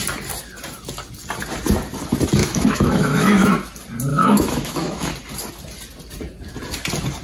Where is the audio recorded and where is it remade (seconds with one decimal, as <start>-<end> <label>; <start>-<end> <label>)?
0.0-2.4 recorded; 2.4-3.5 remade; 3.5-4.1 recorded; 4.1-5.1 remade; 5.1-7.2 recorded